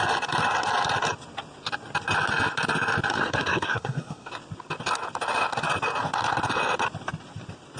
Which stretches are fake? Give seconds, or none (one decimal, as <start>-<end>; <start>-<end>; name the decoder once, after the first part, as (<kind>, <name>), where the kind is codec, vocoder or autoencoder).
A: 3.1-4.3 (codec, SNAC)